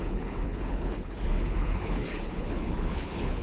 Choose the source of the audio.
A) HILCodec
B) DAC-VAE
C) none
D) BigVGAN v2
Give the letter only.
A